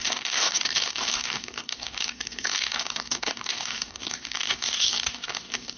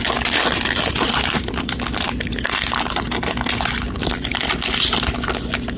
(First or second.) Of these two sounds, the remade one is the first